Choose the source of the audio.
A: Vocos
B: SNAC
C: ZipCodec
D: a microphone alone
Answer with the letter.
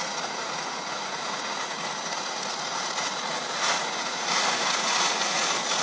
A